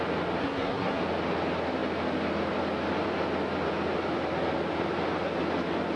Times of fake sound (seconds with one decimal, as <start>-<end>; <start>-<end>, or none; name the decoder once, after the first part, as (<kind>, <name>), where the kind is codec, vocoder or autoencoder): 0.4-1.0 (codec, SNAC)